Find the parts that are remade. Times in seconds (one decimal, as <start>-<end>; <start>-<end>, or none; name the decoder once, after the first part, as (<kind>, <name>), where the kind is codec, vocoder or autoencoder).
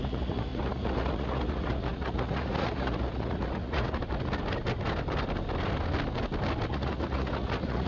0.0-4.0 (vocoder, Vocos); 6.7-7.9